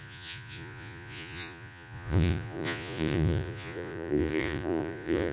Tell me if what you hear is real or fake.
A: fake